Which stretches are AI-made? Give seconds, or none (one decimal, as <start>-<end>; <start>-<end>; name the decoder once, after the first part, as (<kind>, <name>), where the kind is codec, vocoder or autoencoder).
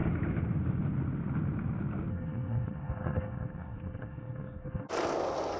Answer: 2.1-4.9 (codec, SNAC)